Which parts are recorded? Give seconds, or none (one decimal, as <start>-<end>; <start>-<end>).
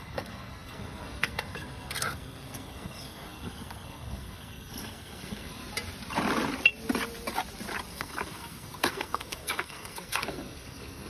5.6-7.9